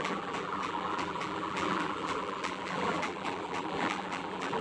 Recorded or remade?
remade